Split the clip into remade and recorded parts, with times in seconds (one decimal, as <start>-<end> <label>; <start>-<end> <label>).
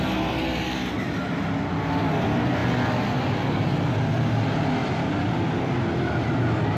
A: 0.0-6.8 recorded